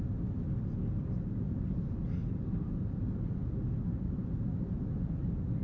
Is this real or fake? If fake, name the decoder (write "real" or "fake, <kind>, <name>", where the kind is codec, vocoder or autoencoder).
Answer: real